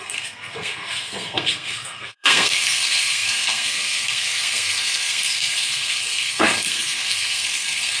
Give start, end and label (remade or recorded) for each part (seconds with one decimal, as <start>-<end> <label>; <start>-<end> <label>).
0.0-8.0 remade